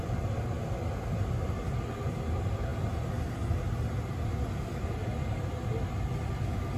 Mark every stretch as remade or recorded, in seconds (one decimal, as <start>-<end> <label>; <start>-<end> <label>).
0.0-6.8 recorded